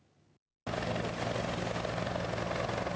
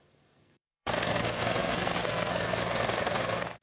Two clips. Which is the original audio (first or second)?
first